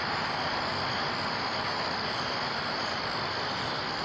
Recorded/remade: recorded